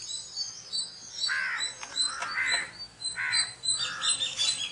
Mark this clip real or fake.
real